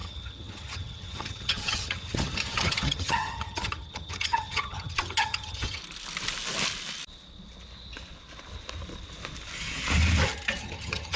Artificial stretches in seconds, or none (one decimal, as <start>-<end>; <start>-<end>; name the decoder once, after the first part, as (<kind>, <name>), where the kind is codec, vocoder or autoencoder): 0.0-5.8 (vocoder, HiFi-GAN); 10.6-11.2